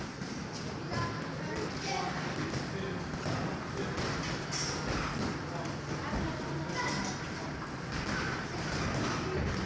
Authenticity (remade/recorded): recorded